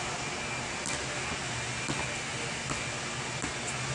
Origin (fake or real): real